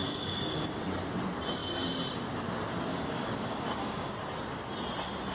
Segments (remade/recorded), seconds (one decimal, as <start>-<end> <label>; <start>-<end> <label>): 0.0-0.8 remade; 0.8-2.9 recorded; 2.9-4.1 remade; 4.1-5.3 recorded